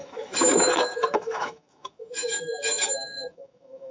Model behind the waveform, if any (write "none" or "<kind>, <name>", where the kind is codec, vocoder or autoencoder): autoencoder, DAC-VAE